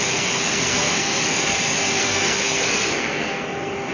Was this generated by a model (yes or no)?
yes